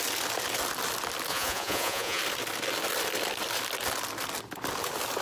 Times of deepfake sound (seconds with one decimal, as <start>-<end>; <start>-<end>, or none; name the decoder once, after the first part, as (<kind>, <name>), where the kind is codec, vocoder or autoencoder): 1.3-2.2 (vocoder, Vocos)